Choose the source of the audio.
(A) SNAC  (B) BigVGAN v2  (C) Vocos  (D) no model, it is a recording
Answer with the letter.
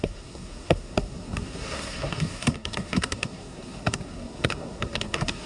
A